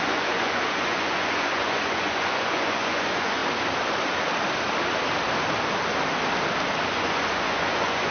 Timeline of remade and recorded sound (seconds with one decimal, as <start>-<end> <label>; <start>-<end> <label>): 0.0-3.4 remade; 3.4-6.9 recorded; 6.9-8.1 remade